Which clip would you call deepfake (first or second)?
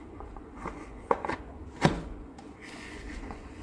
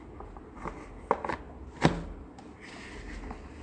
first